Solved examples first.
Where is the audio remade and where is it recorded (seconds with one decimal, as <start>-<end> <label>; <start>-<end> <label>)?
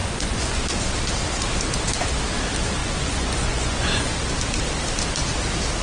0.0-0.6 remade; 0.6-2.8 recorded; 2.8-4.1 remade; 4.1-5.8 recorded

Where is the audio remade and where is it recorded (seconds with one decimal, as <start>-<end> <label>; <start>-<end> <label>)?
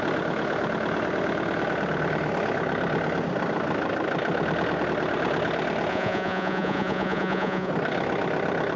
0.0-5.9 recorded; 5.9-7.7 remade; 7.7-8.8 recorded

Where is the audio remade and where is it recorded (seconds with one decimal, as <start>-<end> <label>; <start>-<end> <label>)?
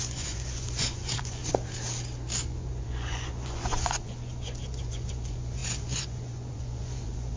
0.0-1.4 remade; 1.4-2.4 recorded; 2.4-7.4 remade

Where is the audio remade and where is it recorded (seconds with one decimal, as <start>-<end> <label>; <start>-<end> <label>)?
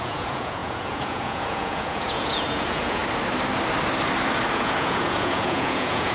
0.0-3.0 remade; 3.0-4.5 recorded; 4.5-6.1 remade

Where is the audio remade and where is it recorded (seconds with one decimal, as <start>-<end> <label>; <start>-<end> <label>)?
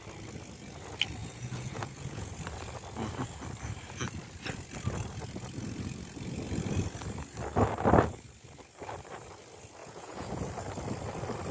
0.0-1.2 recorded; 1.2-2.3 remade; 2.3-9.8 recorded; 9.8-10.5 remade; 10.5-11.5 recorded